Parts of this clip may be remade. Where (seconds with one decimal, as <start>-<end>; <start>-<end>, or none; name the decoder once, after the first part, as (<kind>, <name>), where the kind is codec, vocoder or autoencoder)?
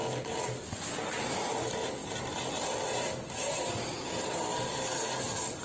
none